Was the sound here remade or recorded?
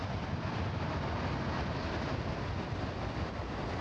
recorded